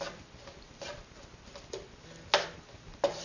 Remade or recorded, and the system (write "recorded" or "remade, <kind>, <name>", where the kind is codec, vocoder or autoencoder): recorded